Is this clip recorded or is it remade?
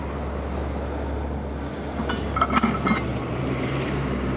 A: recorded